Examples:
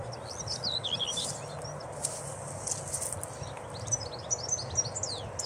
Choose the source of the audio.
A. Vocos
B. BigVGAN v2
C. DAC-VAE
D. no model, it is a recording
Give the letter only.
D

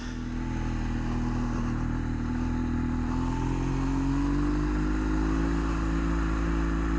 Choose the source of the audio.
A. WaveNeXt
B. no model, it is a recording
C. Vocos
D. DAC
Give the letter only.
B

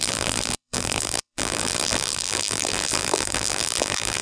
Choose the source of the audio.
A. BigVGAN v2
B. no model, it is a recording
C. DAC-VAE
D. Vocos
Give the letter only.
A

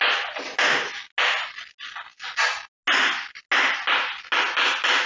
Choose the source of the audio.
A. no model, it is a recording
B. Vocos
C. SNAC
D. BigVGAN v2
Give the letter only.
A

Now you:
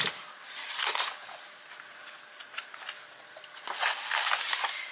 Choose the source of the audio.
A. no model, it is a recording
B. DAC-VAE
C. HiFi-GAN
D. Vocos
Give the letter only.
A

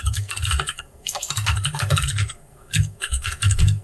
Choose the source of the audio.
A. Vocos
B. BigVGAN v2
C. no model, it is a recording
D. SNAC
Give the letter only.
D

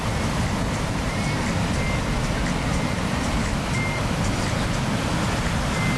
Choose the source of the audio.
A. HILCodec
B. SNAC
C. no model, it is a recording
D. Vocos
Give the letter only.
C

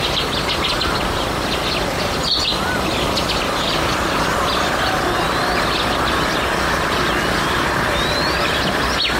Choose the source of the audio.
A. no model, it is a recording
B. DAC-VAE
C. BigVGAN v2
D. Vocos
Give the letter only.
A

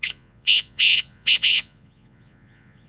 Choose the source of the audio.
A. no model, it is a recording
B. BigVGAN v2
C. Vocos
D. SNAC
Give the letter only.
C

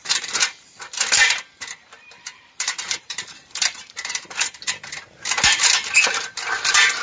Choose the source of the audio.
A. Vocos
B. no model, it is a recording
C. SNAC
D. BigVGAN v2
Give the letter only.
D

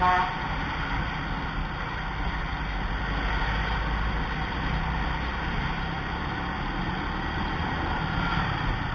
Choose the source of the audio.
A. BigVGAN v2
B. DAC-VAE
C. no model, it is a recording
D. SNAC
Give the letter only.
C